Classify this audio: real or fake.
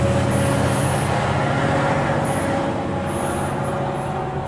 real